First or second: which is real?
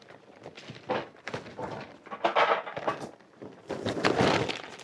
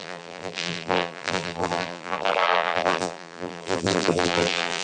first